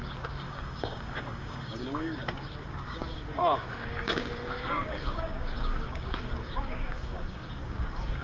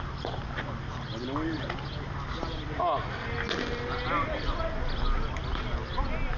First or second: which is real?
second